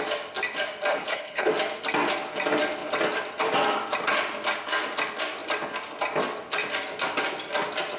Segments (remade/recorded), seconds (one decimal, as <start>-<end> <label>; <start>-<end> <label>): 0.0-0.9 recorded; 0.9-1.5 remade; 1.5-8.0 recorded